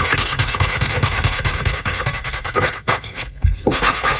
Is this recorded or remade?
remade